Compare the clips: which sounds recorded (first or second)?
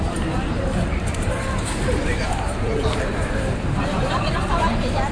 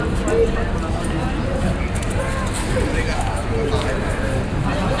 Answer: second